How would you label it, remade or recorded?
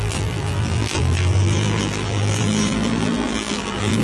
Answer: remade